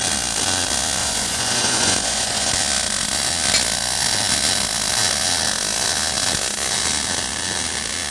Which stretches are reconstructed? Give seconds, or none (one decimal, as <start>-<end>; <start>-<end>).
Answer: 1.0-2.5